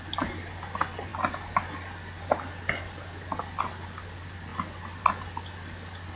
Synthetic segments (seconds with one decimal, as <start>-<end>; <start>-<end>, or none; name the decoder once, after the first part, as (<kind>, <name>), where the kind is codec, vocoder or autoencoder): none